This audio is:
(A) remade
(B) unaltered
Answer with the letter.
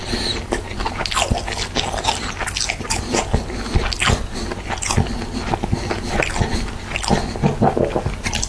B